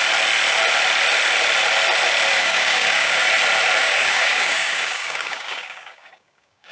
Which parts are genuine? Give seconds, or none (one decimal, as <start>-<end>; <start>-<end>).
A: 0.0-2.4; 3.2-3.8